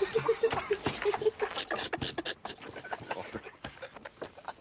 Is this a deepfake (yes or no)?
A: no